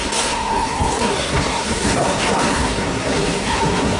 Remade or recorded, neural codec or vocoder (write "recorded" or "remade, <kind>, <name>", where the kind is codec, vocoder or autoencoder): remade, codec, SNAC